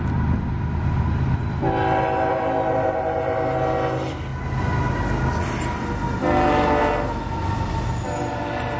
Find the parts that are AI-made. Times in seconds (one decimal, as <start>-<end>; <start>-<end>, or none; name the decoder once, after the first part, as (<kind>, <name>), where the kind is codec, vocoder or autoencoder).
none